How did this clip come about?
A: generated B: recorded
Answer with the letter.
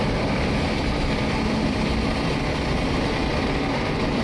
A